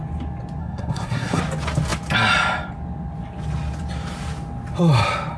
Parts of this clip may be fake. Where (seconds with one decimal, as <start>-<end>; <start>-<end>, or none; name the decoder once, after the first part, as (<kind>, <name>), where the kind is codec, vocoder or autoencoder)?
0.6-1.4 (codec, SNAC)

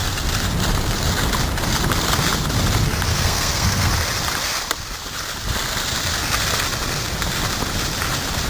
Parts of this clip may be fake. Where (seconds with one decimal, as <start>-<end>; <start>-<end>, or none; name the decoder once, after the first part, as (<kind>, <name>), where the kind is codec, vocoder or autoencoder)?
3.1-3.9 (codec, SNAC)